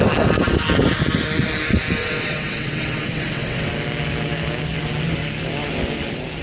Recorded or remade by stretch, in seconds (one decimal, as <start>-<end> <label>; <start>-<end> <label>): 0.0-2.0 recorded; 2.0-3.7 remade; 3.7-6.4 recorded